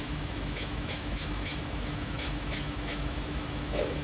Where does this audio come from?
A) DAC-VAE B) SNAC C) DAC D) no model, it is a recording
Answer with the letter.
A